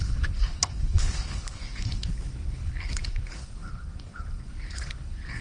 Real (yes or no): no